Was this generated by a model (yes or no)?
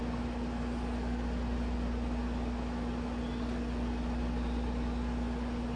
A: no